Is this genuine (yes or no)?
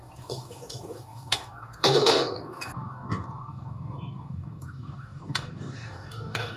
no